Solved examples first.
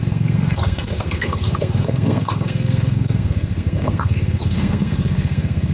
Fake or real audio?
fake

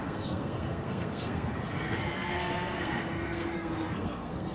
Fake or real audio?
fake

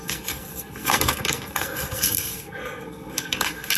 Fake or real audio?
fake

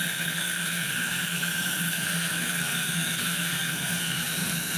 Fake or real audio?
fake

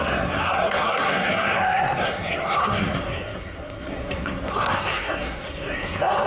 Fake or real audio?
fake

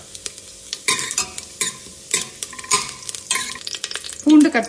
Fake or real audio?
real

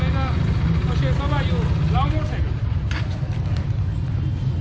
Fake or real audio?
real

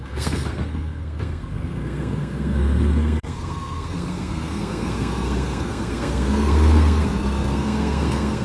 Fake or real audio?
fake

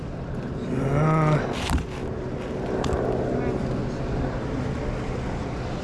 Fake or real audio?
real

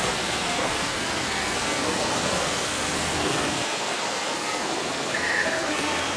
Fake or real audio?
fake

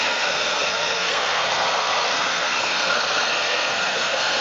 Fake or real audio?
fake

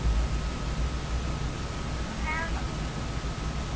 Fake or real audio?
real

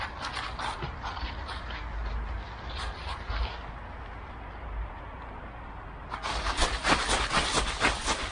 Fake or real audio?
real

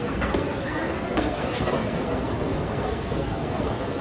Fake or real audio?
fake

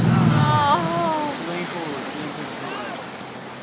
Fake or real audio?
real